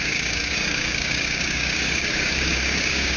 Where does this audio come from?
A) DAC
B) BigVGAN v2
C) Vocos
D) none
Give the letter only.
A